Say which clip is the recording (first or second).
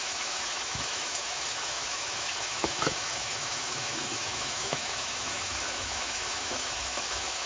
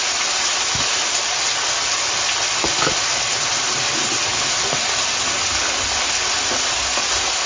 second